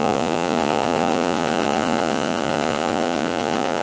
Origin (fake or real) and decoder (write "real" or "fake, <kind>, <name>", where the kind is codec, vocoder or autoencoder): fake, vocoder, Vocos